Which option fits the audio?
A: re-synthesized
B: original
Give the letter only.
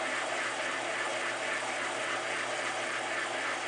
B